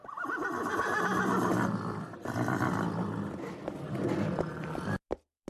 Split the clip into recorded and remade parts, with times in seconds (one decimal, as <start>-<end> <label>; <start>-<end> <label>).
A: 0.0-5.5 recorded